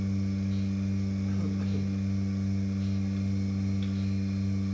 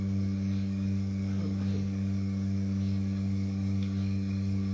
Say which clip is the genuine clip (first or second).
first